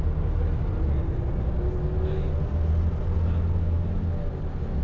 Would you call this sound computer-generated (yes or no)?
no